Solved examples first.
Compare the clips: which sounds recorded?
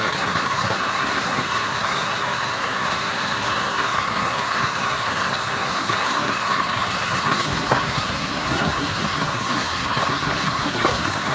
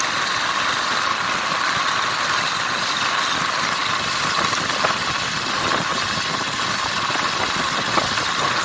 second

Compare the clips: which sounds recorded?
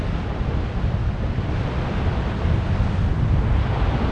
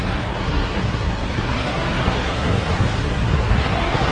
first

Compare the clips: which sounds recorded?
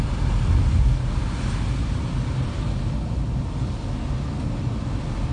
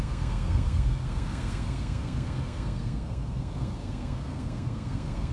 first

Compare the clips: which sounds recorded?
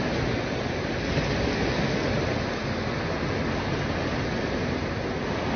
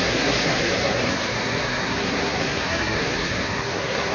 first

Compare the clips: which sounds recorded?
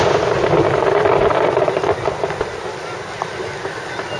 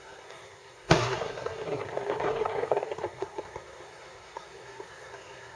first